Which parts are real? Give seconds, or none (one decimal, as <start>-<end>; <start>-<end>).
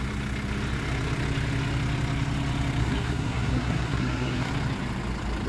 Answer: 0.0-2.8; 4.5-5.5